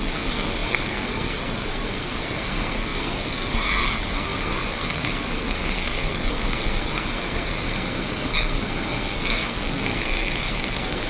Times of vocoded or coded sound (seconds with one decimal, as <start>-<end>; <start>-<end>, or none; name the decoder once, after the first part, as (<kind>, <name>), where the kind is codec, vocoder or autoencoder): 0.0-11.1 (codec, SNAC)

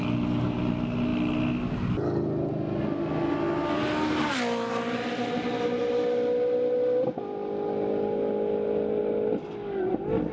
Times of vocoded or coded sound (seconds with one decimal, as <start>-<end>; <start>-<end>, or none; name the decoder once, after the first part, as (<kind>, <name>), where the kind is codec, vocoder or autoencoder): none